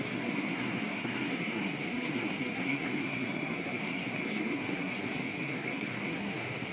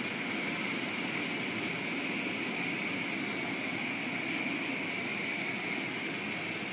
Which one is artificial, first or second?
first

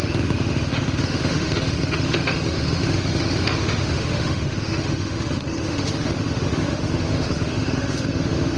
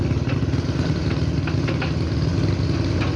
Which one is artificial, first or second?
first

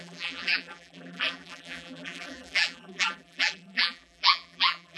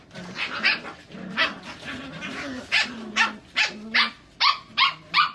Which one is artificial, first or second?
first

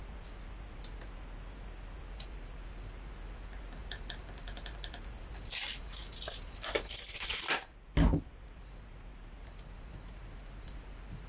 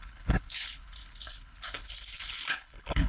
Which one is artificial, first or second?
second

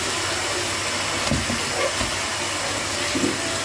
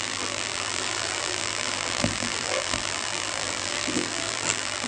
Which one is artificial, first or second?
second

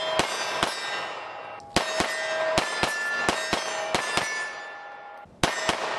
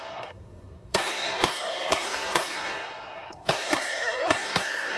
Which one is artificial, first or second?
second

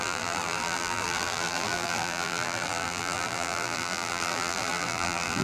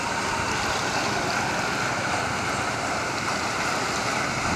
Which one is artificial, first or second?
first